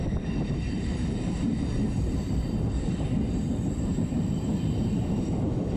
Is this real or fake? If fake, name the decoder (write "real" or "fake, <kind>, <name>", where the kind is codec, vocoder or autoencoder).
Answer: fake, vocoder, BigVGAN v2